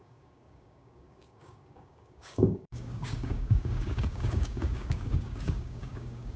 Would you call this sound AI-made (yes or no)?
yes